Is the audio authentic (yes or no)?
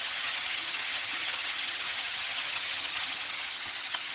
no